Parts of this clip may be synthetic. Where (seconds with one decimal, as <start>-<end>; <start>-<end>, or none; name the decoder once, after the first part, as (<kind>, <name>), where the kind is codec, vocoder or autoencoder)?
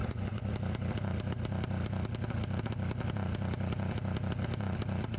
0.0-0.5 (vocoder, Vocos)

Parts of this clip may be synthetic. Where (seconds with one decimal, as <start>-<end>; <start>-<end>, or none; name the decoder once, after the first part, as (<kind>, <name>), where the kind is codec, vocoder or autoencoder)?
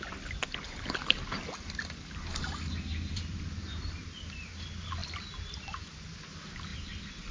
2.9-4.5 (vocoder, BigVGAN v2); 5.0-5.7; 6.7-7.3